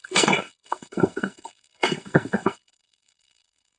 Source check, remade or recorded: remade